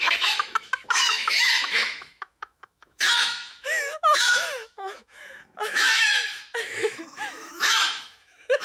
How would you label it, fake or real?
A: fake